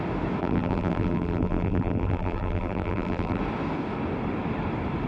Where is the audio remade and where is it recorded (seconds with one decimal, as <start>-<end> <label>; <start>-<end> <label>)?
0.0-0.4 recorded; 0.4-3.4 remade; 3.4-5.1 recorded